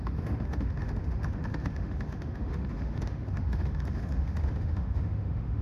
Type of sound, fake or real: fake